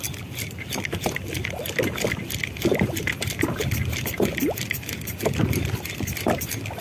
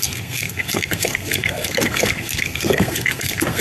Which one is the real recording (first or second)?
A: first